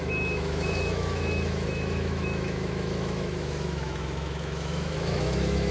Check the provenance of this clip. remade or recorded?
remade